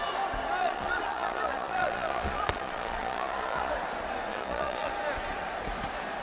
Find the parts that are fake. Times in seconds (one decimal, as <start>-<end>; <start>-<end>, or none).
0.6-3.7; 4.3-4.9